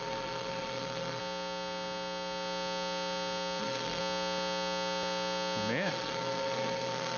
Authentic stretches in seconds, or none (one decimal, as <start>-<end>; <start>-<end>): 1.2-3.6; 4.0-5.9